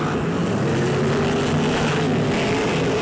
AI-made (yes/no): no